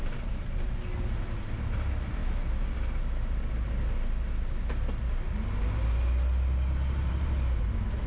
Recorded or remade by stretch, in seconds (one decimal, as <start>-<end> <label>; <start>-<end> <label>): 0.0-8.1 recorded